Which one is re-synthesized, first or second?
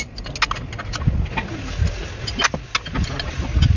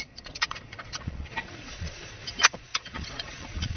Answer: second